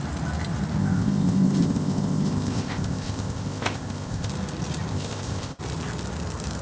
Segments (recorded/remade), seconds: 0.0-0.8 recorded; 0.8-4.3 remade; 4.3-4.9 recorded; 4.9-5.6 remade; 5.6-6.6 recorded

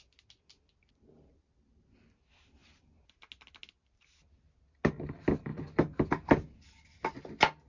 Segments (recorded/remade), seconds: 0.0-7.7 recorded

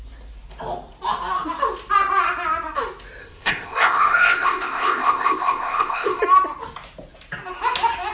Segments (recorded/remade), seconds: 0.0-3.2 recorded; 3.2-6.2 remade; 6.2-8.1 recorded

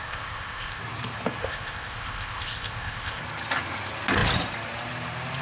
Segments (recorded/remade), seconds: 0.0-0.8 remade; 0.8-1.4 recorded; 1.4-3.2 remade; 3.2-5.4 recorded

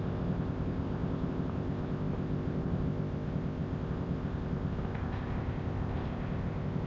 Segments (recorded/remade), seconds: 0.0-6.9 remade

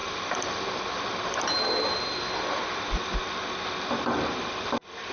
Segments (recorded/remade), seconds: 0.0-5.1 recorded

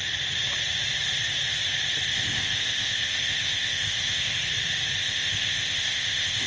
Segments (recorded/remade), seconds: 0.0-2.1 recorded; 2.1-4.4 remade; 4.4-5.0 recorded; 5.0-6.5 remade